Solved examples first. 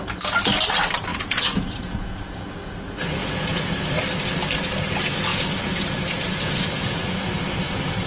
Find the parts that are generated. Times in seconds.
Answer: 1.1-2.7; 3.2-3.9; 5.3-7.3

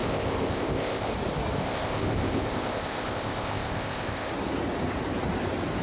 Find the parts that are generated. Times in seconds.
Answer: 0.0-1.1; 1.6-4.3